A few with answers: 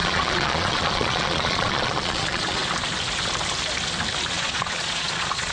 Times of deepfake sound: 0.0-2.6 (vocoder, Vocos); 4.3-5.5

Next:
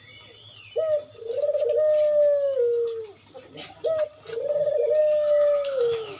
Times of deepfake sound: 5.0-6.2 (autoencoder, DAC-VAE)

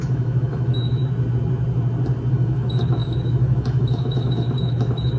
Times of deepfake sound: 0.0-1.0 (autoencoder, DAC-VAE); 2.3-5.2

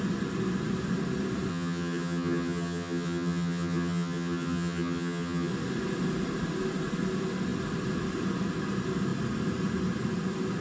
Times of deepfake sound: 1.5-5.5 (vocoder, HiFi-GAN)

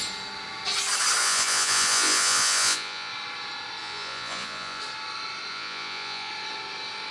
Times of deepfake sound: 1.2-3.1 (vocoder, Vocos); 3.8-4.8; 5.5-6.3

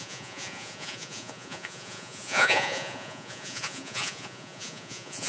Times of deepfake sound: 0.0-5.3 (vocoder, Vocos)

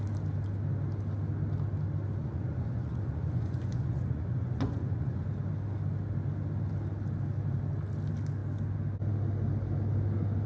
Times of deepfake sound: 2.2-5.2 (vocoder, Vocos)